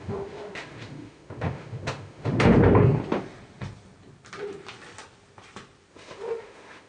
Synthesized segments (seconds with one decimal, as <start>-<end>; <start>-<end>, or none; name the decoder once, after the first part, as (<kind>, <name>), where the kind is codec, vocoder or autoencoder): 0.0-2.5 (autoencoder, DAC-VAE); 5.9-6.9

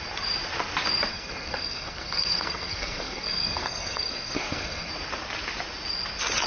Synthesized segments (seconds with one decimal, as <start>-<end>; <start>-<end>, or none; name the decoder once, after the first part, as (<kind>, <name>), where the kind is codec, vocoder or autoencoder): 1.1-4.9 (codec, SNAC)

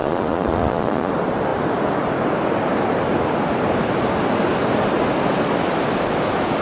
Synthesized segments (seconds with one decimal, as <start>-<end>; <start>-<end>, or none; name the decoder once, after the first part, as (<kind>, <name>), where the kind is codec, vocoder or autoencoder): 0.0-1.1 (vocoder, Vocos)

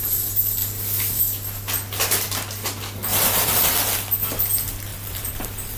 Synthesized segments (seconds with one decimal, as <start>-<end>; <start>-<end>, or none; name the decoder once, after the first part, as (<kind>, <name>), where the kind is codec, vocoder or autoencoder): 0.6-1.2 (vocoder, BigVGAN v2); 3.1-3.7; 4.9-5.8

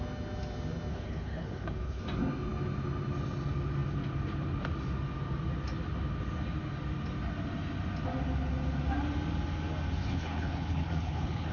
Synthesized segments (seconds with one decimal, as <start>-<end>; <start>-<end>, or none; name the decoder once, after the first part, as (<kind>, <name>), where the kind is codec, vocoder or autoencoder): 0.9-2.0 (codec, HILCodec); 10.0-11.5

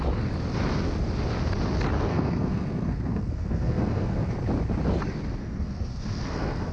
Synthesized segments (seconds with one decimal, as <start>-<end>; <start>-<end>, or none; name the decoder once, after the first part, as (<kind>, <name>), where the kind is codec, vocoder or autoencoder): 2.1-4.3 (codec, SNAC); 5.4-6.7